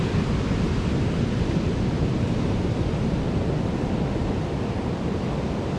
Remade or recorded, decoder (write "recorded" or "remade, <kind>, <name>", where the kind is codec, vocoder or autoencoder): recorded